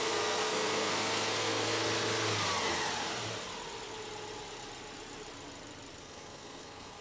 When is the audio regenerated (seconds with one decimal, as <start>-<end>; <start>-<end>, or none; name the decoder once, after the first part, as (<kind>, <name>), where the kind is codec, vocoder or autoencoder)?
0.0-1.8 (codec, SNAC); 6.0-7.0